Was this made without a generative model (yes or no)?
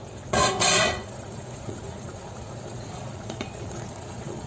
no